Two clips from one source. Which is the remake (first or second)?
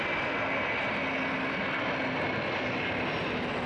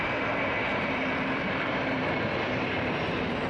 second